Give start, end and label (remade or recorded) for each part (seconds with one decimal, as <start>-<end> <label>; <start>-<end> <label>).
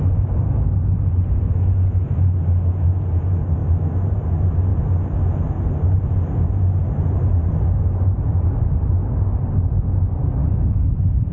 0.0-11.3 recorded